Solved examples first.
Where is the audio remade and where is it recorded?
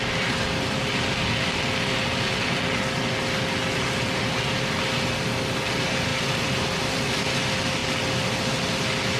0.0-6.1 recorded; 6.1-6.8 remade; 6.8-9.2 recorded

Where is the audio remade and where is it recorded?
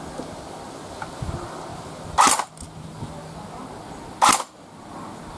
0.0-5.4 recorded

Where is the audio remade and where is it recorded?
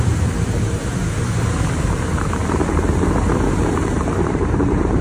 0.0-0.8 remade; 0.8-1.7 recorded; 1.7-2.4 remade; 2.4-3.3 recorded; 3.3-5.0 remade